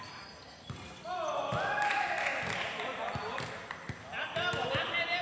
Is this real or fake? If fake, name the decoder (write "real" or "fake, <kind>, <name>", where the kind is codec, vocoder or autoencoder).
real